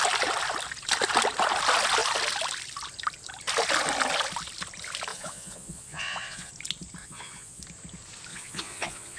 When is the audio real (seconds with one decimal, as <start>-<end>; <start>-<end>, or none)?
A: 0.0-5.1; 6.5-7.0; 7.6-8.3